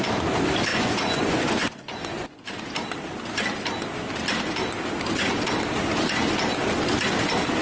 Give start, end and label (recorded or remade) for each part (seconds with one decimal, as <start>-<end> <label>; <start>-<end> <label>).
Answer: 0.0-0.7 recorded; 0.7-2.4 remade; 2.4-7.6 recorded